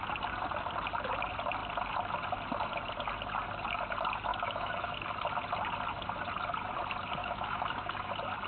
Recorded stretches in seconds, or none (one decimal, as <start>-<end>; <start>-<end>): 0.0-4.3; 4.9-7.2; 8.1-8.5